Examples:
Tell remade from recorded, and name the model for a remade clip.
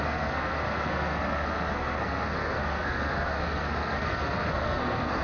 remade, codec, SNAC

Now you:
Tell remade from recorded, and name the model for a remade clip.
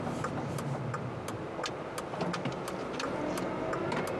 recorded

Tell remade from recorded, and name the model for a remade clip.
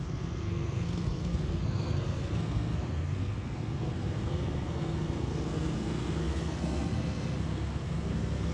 remade, codec, SNAC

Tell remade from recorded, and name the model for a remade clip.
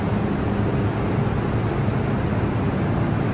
recorded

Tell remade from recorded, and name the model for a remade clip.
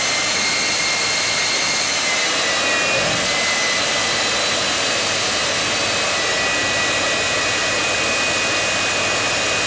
recorded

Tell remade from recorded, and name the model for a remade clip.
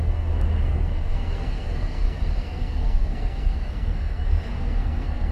remade, codec, SNAC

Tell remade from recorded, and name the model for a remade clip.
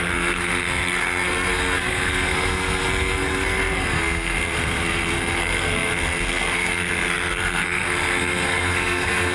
remade, codec, SNAC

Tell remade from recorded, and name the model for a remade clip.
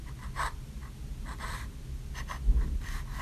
recorded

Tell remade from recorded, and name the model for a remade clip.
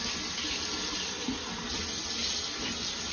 recorded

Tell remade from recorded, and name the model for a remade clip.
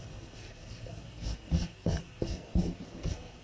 remade, codec, SNAC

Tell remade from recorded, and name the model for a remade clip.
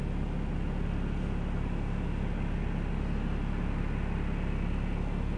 recorded